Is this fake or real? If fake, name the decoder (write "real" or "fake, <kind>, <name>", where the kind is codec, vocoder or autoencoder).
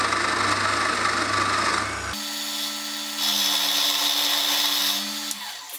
real